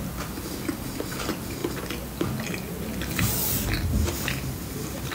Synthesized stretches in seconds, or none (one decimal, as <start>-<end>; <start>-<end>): none